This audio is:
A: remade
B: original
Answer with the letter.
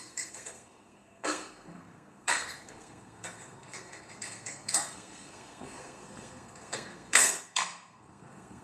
A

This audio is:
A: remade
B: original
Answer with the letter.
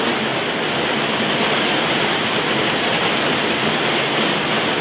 B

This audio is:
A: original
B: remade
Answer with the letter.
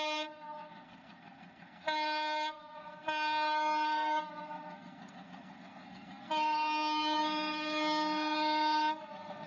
B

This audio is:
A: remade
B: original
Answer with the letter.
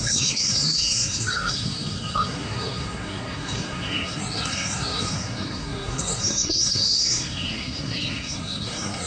A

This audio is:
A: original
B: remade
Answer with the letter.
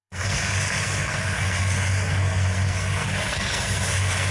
B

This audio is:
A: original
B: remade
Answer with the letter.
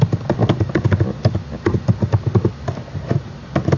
A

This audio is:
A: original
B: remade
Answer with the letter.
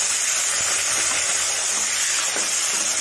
A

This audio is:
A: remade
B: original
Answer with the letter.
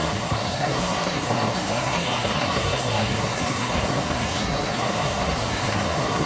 A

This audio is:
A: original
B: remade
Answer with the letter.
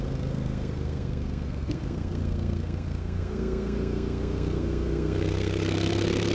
B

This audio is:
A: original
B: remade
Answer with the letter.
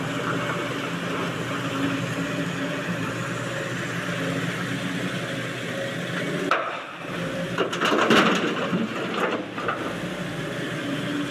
A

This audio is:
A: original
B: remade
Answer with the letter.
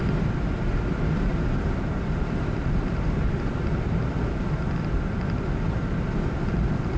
A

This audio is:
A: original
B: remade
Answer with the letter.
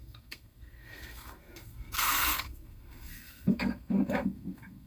B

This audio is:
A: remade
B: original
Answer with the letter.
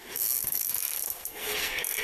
A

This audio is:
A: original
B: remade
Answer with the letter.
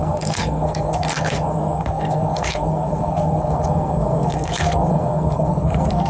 B